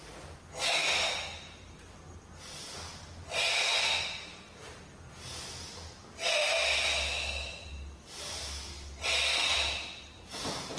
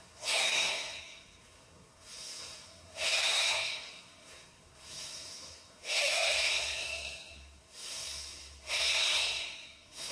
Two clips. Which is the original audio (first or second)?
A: first